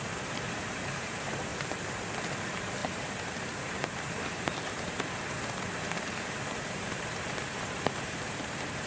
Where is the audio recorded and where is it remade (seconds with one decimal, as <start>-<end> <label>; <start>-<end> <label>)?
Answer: 0.0-1.5 remade; 1.5-2.4 recorded; 2.4-8.9 remade